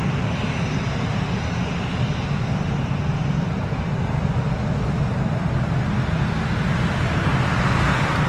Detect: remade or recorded recorded